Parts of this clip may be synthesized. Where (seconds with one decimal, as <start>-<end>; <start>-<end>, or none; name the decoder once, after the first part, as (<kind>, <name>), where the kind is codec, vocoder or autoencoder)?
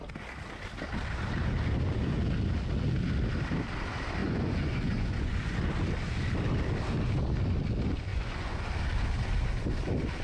4.2-5.6 (vocoder, Vocos); 8.1-8.7